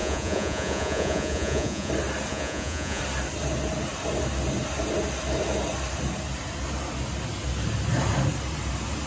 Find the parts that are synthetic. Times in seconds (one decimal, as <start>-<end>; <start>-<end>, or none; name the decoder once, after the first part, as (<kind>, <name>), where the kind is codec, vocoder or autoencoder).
0.0-1.9 (vocoder, Vocos); 2.3-3.0